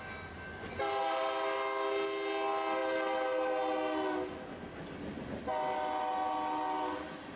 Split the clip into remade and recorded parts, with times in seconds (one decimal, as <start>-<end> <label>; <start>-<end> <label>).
0.0-7.4 recorded